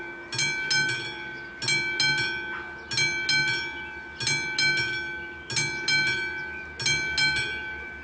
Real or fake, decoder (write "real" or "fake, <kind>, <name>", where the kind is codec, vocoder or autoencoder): real